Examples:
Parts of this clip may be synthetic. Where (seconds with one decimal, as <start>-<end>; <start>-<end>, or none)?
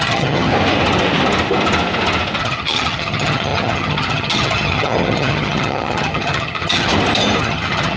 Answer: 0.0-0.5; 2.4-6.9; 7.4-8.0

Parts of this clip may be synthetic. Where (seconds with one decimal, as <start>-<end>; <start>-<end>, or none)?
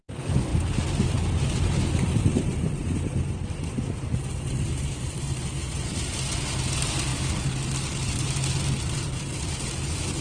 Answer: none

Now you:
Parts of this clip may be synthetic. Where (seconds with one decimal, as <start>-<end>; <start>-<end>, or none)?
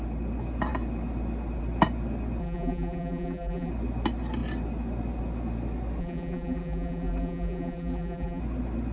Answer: 2.4-3.7; 6.0-8.4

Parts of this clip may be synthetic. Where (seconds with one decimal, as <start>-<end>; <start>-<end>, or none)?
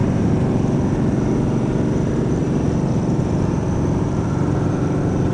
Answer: 0.0-0.5; 2.4-4.4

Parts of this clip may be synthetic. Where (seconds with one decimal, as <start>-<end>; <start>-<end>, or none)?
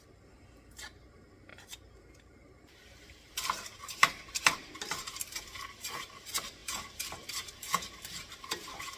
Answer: 0.0-9.0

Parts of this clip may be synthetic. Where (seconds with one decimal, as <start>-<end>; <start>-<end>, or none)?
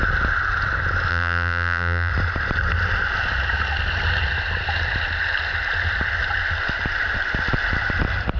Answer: 1.1-2.1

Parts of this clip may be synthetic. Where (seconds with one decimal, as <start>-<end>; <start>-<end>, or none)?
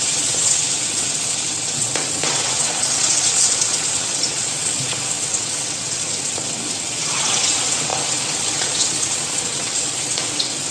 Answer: 0.0-10.7